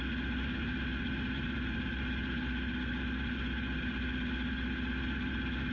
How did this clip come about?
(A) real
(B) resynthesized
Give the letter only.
A